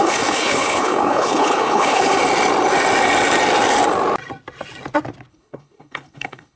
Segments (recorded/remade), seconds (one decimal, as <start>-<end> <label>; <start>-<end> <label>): 0.0-2.2 remade; 2.2-5.3 recorded; 5.3-6.6 remade